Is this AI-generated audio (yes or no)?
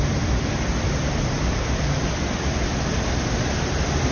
yes